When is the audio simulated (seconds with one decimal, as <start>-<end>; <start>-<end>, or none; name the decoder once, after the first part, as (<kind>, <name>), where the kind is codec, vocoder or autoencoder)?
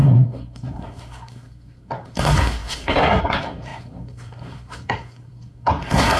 0.0-6.2 (codec, SNAC)